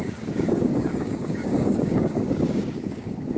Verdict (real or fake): fake